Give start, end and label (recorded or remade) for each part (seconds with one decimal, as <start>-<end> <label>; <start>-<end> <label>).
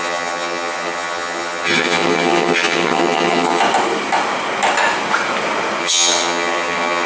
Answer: 0.0-3.6 remade; 3.6-5.8 recorded; 5.8-7.1 remade